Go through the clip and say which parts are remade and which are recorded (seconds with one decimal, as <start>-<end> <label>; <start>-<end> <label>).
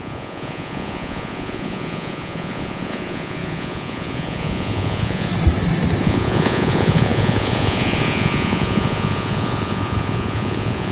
0.0-5.3 remade; 5.3-6.0 recorded; 6.0-10.9 remade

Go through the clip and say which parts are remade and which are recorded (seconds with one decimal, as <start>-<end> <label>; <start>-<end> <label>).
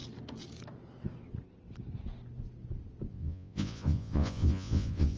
0.0-3.1 recorded; 3.1-5.2 remade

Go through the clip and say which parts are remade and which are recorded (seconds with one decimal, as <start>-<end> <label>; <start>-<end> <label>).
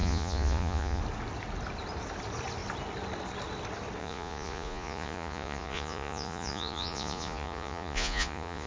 0.0-1.0 remade; 1.0-4.0 recorded; 4.0-8.7 remade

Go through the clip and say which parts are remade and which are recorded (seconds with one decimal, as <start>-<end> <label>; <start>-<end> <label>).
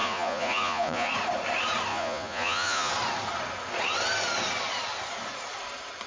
0.0-1.1 remade; 1.1-1.9 recorded; 1.9-2.9 remade; 2.9-6.1 recorded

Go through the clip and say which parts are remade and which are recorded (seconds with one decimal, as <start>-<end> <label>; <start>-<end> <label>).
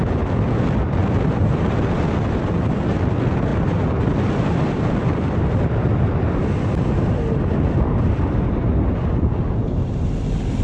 0.0-10.6 recorded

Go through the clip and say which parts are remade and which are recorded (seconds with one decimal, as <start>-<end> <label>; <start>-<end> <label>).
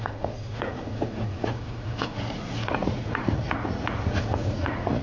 0.0-5.0 remade